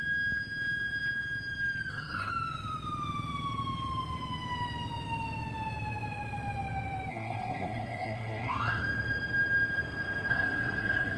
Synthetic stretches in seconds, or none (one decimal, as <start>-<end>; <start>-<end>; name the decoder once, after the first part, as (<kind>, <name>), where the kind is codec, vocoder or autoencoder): 1.9-2.3 (codec, SNAC); 7.1-8.8; 10.3-11.2